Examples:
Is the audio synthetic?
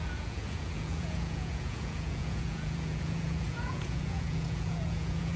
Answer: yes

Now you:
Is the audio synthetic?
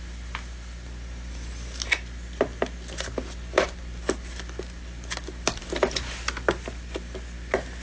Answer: no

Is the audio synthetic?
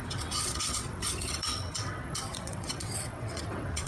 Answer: yes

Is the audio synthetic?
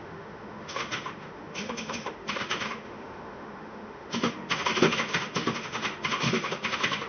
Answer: yes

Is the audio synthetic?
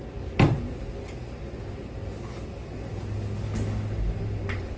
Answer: no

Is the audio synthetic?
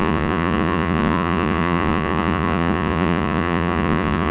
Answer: yes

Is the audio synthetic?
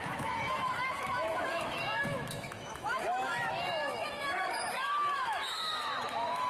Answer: yes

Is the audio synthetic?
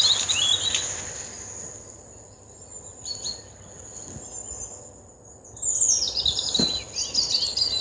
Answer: no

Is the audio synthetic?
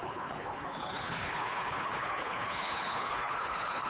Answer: yes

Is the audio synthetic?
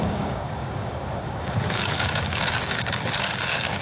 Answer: yes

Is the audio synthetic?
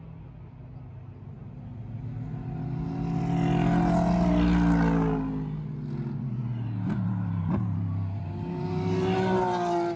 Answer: no